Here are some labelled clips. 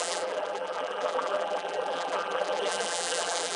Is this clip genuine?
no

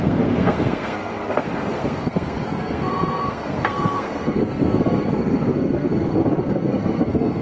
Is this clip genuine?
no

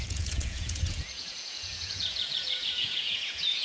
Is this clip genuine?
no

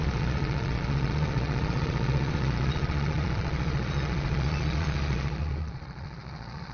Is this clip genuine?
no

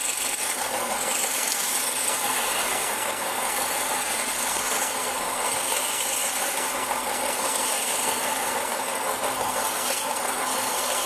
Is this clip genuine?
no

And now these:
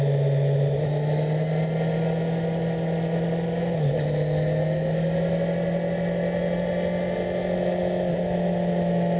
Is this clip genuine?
yes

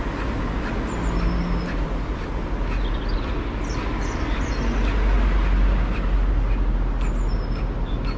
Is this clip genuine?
yes